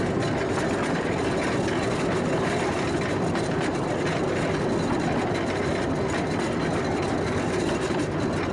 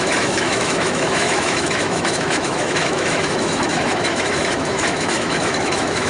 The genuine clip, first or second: first